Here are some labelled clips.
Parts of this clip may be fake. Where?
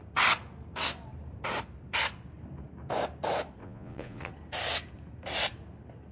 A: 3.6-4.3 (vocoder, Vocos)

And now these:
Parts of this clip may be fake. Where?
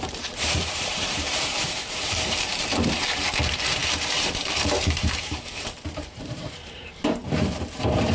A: 0.0-8.1 (vocoder, BigVGAN v2)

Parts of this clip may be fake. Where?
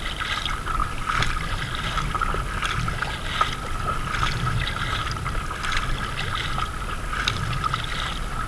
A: none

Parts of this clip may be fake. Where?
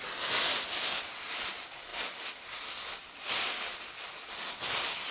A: 1.9-3.5 (vocoder, BigVGAN v2)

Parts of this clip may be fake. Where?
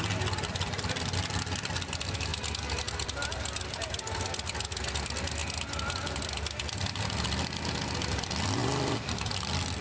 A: 0.0-2.3 (vocoder, BigVGAN v2); 2.9-5.4; 6.1-9.8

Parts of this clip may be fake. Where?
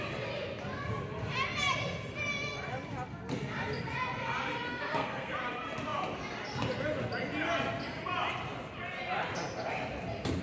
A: 4.7-5.3 (codec, SNAC)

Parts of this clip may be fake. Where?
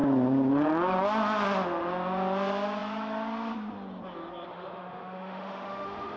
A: 4.5-6.2 (autoencoder, DAC-VAE)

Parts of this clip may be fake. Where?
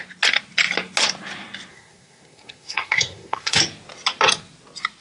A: 1.7-3.6 (codec, SNAC)